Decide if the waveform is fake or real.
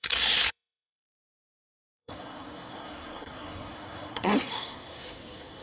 fake